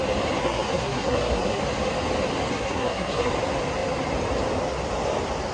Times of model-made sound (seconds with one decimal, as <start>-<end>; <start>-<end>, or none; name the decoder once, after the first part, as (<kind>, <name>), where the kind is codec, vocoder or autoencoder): 0.4-1.6 (codec, SNAC); 2.5-3.3

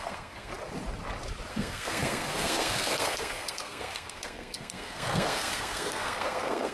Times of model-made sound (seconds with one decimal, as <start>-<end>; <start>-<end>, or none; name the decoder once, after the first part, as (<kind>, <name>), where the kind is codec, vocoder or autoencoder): 0.0-0.5 (codec, SNAC); 1.5-6.7

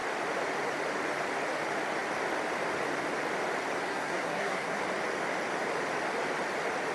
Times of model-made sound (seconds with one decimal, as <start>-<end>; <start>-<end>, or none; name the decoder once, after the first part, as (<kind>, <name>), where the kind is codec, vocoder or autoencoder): 3.9-4.8 (codec, SNAC)